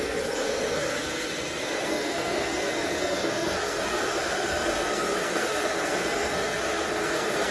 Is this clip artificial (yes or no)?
yes